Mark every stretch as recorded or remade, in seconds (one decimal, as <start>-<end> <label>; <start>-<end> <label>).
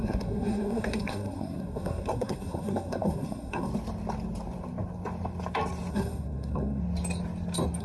0.0-3.7 remade; 3.7-5.9 recorded; 5.9-6.8 remade; 6.8-7.8 recorded